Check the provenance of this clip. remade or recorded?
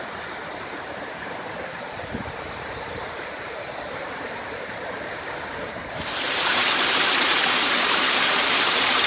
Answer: remade